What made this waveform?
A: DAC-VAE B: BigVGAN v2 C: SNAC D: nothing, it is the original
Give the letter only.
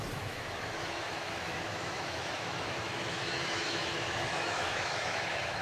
A